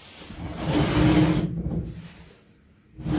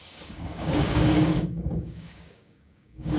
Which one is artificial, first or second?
second